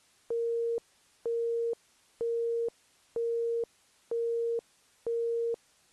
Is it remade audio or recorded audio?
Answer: recorded